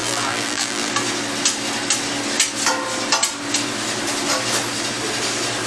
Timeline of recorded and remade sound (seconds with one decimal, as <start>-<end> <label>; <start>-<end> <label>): 0.0-0.9 remade; 0.9-5.7 recorded